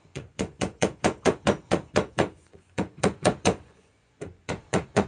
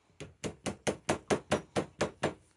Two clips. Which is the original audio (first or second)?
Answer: second